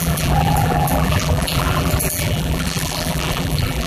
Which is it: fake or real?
fake